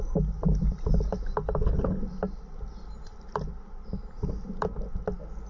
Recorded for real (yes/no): yes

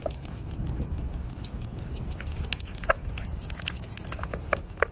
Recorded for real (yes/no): yes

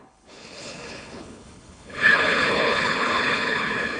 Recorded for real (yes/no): no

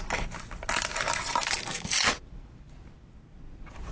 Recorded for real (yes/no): yes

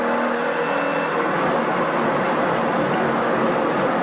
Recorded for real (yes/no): yes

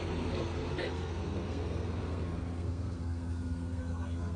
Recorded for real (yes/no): no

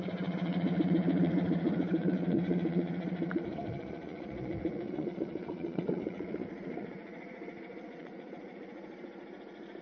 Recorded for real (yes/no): no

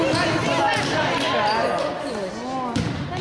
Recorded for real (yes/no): yes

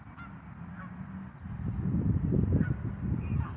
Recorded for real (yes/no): yes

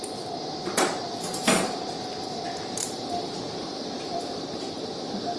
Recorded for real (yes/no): no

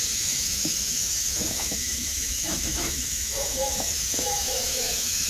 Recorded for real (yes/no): no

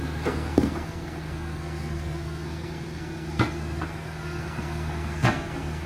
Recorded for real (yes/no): no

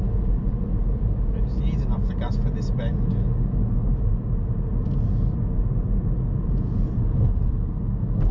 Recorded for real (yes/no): yes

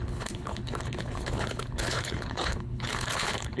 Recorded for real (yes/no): no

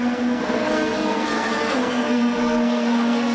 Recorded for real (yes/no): no